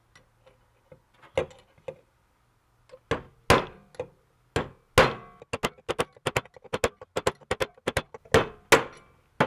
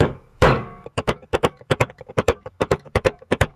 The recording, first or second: first